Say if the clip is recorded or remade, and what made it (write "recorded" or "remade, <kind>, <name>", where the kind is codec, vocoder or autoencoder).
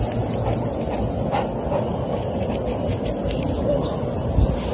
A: recorded